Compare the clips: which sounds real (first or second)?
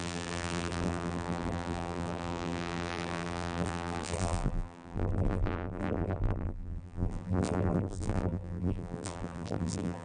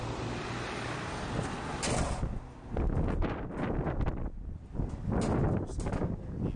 second